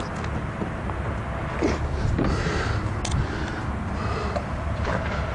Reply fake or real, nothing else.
real